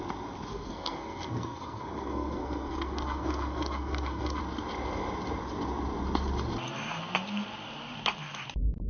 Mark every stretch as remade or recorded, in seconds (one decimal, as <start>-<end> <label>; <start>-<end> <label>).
0.0-0.5 recorded; 0.5-4.4 remade; 4.4-8.9 recorded